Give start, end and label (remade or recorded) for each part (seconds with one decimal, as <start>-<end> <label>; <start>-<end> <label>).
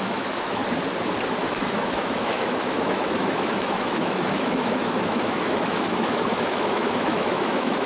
0.0-0.6 remade; 0.6-1.7 recorded; 1.7-7.9 remade